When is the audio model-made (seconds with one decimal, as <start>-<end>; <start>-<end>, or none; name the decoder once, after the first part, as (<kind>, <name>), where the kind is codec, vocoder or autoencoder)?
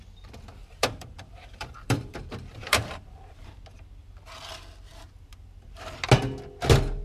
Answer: 0.6-3.5 (vocoder, BigVGAN v2)